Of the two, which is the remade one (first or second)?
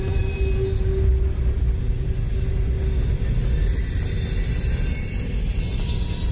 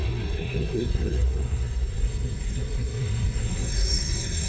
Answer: second